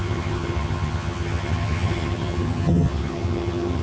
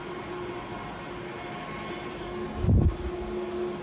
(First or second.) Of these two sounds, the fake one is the first